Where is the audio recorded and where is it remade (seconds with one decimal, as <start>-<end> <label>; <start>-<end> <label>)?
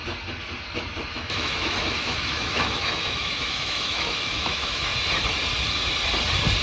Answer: 0.0-1.1 recorded; 1.1-4.9 remade; 4.9-6.6 recorded